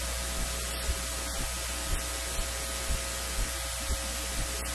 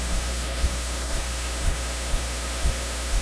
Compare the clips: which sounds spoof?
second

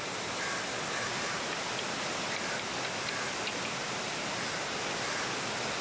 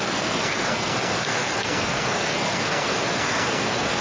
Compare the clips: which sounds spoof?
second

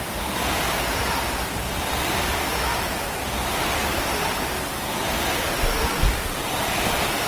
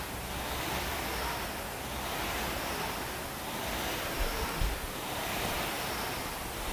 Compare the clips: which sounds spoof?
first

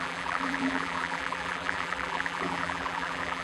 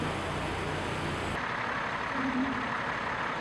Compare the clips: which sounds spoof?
first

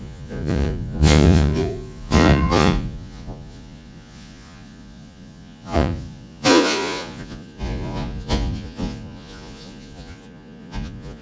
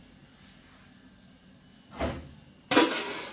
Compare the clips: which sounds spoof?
first